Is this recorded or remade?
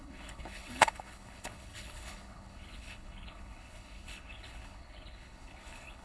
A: remade